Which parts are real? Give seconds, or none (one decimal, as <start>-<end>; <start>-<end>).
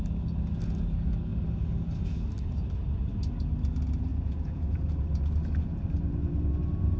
0.0-4.1; 4.9-7.0